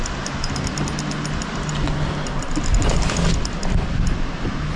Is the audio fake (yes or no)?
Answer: no